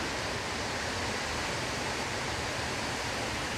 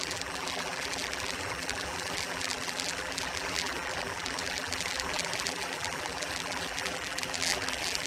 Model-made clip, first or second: second